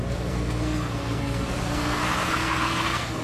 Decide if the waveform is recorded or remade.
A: remade